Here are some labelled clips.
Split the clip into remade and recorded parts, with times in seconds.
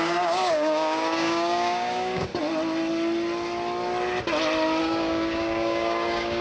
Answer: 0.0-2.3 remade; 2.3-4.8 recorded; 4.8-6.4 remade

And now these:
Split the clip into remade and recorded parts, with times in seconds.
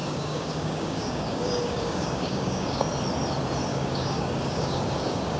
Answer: 0.0-2.8 remade; 2.8-3.7 recorded; 3.7-5.4 remade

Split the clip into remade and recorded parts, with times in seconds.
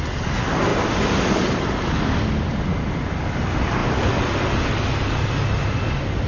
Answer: 0.0-6.3 recorded